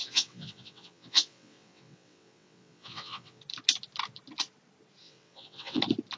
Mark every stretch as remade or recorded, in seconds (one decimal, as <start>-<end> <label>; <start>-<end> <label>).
0.0-3.4 remade; 3.4-5.0 recorded; 5.0-5.8 remade; 5.8-6.2 recorded